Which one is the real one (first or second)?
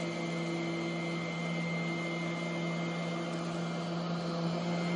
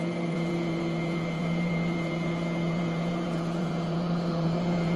first